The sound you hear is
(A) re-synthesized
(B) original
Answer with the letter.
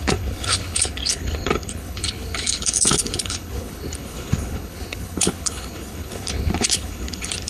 A